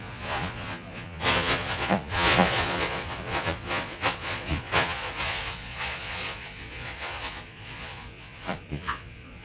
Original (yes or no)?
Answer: no